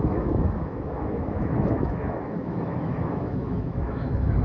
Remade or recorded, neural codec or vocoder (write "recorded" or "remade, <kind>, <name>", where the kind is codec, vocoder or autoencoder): remade, autoencoder, DAC-VAE